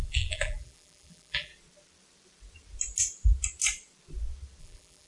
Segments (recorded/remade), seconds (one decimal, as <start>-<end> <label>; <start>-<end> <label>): 0.0-1.5 remade; 1.5-4.6 recorded; 4.6-5.1 remade